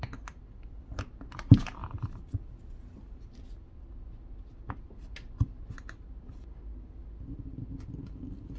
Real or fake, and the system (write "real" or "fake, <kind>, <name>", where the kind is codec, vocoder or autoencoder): real